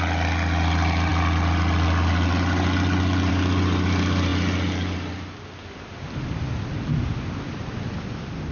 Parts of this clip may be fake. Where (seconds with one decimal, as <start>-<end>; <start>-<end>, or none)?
none

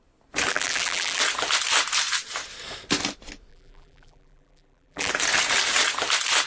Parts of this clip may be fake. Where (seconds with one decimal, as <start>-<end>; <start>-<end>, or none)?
0.5-1.2; 3.5-5.1

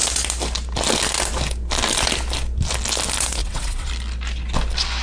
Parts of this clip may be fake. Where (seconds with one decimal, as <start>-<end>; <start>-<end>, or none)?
3.4-3.9

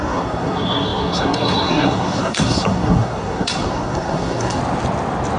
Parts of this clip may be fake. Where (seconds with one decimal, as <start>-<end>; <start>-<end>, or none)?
0.0-4.6

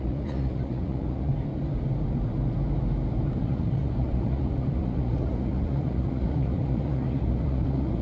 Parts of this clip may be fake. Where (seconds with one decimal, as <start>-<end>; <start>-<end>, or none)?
0.0-1.3; 3.4-8.0